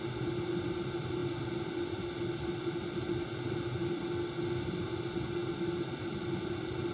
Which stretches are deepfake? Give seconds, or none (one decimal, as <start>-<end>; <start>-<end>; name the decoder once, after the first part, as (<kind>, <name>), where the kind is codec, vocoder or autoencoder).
none